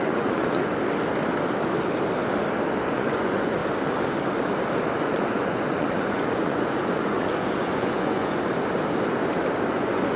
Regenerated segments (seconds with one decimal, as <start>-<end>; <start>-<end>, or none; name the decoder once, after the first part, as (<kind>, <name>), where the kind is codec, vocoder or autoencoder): 0.0-0.7 (vocoder, Vocos); 2.9-3.6; 5.0-8.4; 9.7-10.2